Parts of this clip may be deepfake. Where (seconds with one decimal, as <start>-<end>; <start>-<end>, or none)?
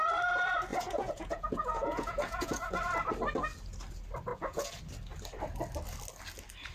0.7-2.8; 4.3-4.8